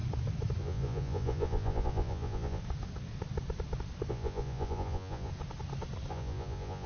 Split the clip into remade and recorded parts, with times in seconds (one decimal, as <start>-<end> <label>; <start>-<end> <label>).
0.0-0.6 recorded; 0.6-2.6 remade; 2.6-4.1 recorded; 4.1-5.3 remade; 5.3-6.1 recorded; 6.1-6.9 remade